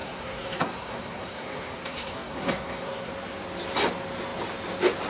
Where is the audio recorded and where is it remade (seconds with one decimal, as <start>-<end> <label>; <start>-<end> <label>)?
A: 0.0-3.1 remade; 3.1-5.1 recorded